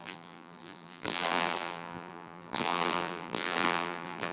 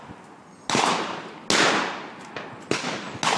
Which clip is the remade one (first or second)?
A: first